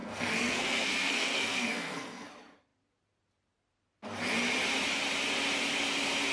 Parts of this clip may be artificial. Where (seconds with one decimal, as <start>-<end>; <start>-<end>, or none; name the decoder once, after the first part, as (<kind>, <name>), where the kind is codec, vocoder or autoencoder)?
0.0-2.3 (codec, SNAC)